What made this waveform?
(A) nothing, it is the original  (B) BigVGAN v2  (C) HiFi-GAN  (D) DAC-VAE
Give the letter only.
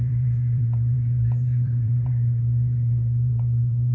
B